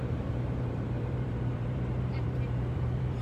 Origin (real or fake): fake